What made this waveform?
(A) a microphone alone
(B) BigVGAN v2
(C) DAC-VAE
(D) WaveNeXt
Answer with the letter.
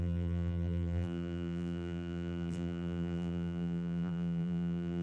B